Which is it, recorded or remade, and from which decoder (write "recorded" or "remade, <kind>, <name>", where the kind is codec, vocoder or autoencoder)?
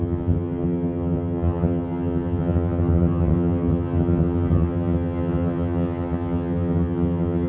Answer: remade, vocoder, HiFi-GAN